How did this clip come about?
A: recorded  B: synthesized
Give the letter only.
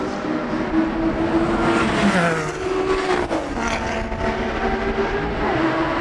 A